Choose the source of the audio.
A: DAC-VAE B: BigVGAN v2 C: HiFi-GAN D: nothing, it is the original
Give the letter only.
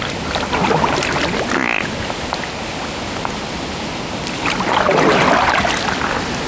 D